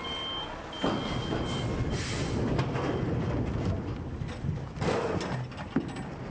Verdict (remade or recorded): recorded